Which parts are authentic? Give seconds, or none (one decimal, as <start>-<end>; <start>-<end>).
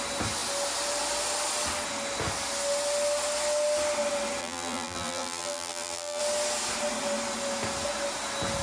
0.0-4.4; 6.2-8.6